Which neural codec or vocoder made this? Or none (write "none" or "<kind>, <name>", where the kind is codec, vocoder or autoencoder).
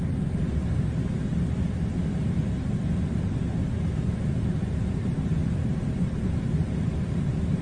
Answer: vocoder, BigVGAN v2